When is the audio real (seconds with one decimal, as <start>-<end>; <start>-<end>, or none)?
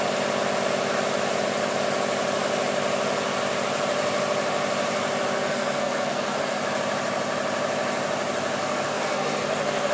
0.0-5.5; 6.6-8.6